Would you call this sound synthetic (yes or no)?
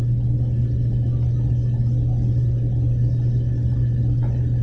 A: no